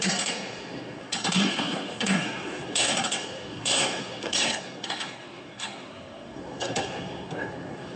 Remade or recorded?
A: remade